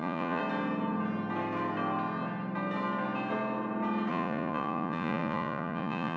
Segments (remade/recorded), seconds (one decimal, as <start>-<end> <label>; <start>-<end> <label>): 0.0-0.4 remade; 0.4-4.1 recorded; 4.1-6.2 remade